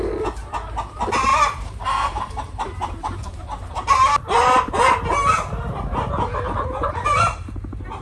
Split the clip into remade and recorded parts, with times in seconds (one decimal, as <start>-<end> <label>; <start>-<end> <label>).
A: 0.0-1.3 recorded; 1.3-6.1 remade; 6.1-8.0 recorded